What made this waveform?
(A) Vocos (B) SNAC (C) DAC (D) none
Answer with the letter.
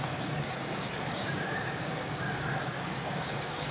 C